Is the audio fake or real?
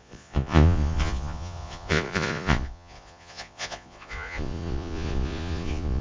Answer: fake